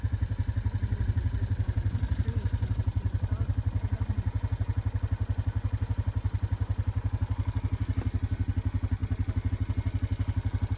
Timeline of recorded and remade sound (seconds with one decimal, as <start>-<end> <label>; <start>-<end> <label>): 0.0-10.8 recorded